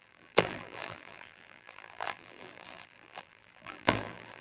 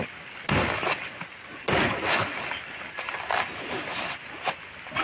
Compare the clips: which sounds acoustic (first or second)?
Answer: second